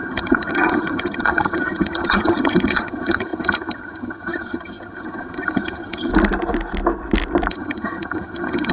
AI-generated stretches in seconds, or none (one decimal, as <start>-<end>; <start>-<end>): 0.0-6.1; 7.5-8.7